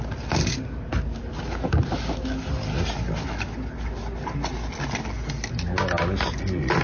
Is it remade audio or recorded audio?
recorded